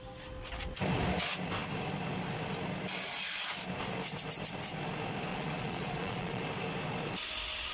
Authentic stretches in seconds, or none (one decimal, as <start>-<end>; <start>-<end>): 0.0-5.3; 6.4-7.7